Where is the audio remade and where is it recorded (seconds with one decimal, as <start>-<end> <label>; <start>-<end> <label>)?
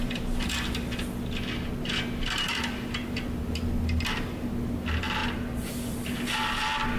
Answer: 0.0-7.0 recorded